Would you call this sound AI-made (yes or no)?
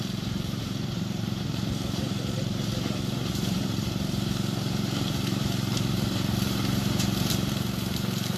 yes